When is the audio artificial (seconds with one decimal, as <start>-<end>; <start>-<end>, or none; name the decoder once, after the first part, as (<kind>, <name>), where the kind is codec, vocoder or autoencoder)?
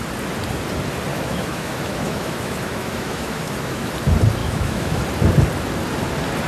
1.1-3.9 (autoencoder, DAC-VAE); 4.4-5.0